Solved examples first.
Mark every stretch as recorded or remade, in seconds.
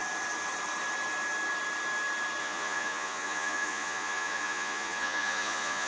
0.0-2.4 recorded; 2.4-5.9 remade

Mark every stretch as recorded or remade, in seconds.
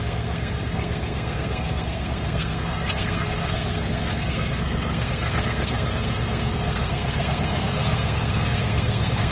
0.0-9.3 remade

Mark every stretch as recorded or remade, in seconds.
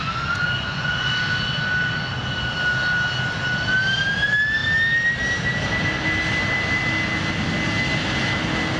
0.0-1.1 remade; 1.1-8.8 recorded